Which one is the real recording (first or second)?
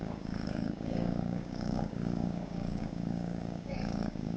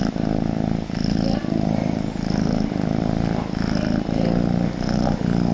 second